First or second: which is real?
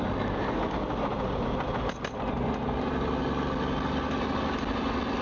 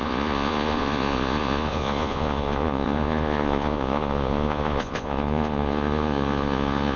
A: first